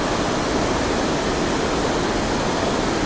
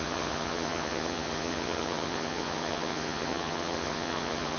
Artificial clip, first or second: second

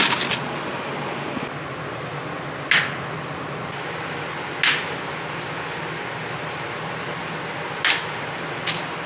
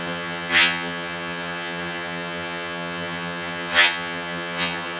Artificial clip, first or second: second